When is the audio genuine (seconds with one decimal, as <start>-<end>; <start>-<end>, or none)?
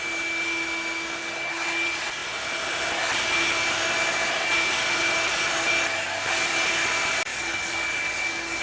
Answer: 0.0-7.3